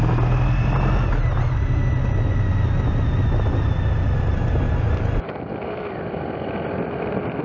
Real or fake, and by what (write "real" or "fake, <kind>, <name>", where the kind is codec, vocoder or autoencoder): real